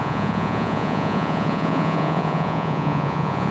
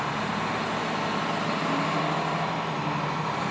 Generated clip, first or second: first